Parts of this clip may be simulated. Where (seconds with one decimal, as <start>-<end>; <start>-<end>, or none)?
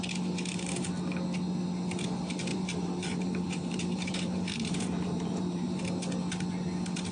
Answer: 2.5-5.8